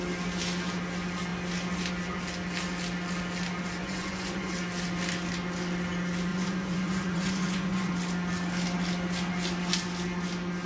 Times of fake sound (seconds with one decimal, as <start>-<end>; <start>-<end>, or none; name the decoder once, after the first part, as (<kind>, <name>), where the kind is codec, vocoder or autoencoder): 3.8-4.5 (vocoder, Vocos); 6.3-7.9